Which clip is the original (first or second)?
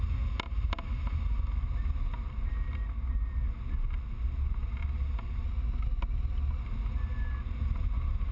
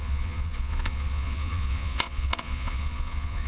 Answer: first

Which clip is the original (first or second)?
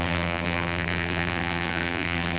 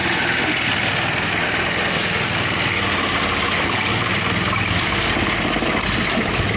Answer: second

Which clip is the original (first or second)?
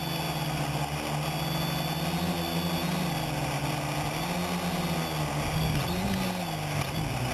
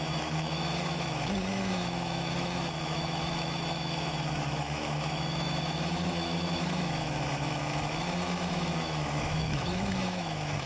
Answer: first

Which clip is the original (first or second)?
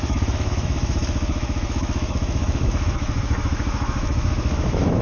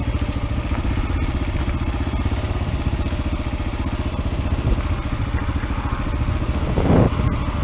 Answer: second